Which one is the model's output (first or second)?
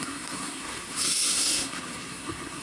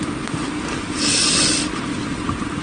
first